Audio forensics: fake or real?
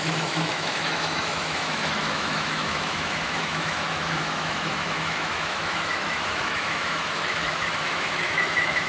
fake